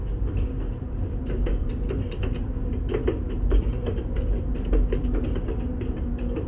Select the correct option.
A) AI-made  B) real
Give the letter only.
B